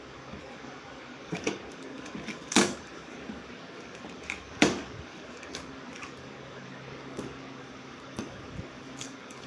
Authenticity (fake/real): fake